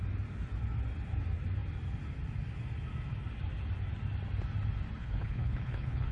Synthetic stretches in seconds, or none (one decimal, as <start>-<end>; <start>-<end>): 5.0-6.1